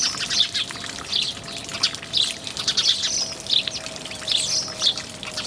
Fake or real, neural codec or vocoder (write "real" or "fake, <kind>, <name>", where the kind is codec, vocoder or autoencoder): real